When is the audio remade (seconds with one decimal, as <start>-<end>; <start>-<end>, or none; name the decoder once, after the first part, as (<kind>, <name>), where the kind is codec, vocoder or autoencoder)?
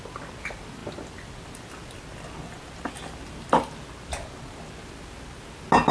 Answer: none